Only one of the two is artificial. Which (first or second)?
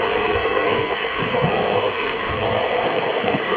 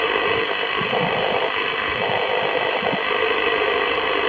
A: first